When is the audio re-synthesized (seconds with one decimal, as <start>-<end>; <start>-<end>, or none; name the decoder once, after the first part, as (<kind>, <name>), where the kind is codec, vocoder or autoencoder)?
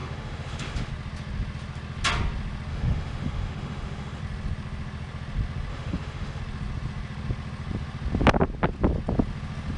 0.0-0.9 (autoencoder, DAC-VAE); 2.7-4.2; 5.7-6.4